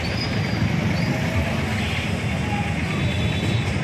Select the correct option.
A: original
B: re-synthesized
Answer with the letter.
A